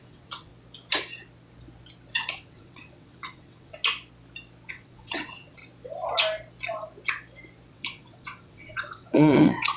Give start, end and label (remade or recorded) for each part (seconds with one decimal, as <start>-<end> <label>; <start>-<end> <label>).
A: 0.0-0.5 remade; 0.5-2.1 recorded; 2.1-3.8 remade; 3.8-4.7 recorded; 4.7-5.6 remade; 5.6-7.7 recorded; 7.7-9.8 remade